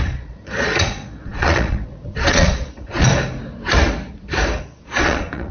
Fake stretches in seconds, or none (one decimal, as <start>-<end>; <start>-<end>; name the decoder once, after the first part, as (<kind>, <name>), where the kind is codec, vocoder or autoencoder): 0.0-3.1 (vocoder, Vocos); 4.6-5.5